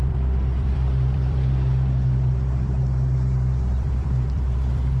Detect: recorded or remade remade